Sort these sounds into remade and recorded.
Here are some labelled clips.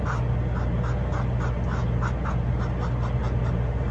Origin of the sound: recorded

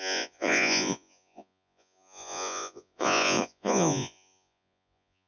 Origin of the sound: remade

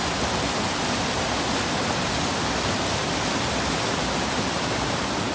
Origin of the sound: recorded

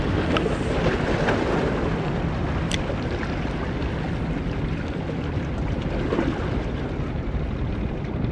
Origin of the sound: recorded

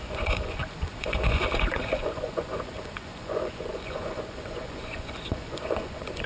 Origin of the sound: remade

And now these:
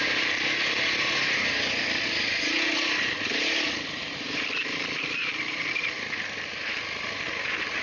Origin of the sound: recorded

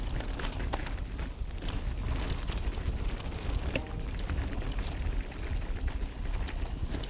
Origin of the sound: recorded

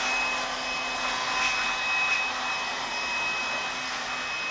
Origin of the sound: recorded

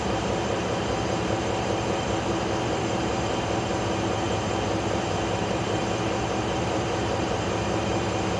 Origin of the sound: remade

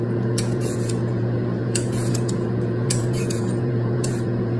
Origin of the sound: remade